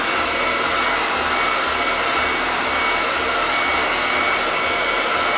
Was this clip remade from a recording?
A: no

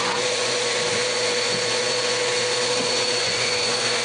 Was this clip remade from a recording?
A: yes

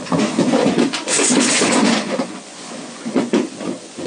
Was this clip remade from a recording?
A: yes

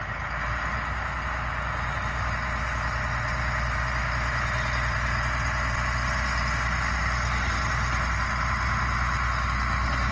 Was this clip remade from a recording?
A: no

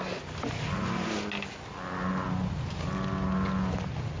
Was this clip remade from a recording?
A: no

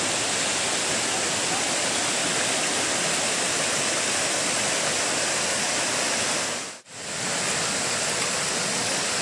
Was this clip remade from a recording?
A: no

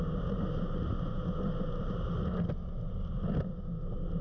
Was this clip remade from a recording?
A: no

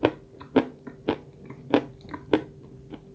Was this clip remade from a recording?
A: no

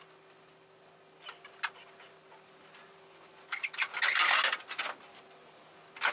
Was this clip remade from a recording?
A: no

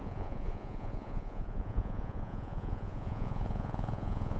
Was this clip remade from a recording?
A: yes